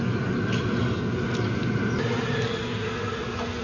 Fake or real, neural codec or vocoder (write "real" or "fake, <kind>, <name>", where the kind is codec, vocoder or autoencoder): real